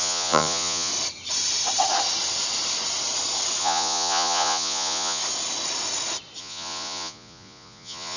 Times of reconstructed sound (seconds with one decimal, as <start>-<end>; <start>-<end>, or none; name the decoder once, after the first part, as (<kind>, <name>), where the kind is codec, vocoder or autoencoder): 0.0-0.9 (vocoder, Vocos); 3.6-5.2; 6.4-8.2